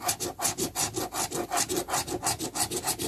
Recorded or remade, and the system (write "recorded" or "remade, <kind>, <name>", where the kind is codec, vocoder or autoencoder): recorded